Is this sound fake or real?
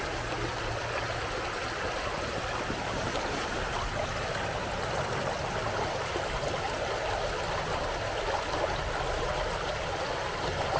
real